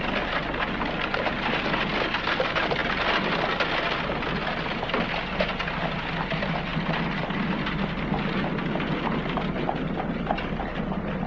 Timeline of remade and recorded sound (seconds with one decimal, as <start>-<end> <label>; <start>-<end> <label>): 0.0-11.3 recorded